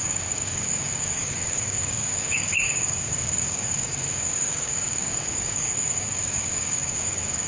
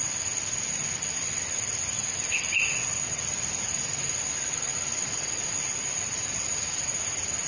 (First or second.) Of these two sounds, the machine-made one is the first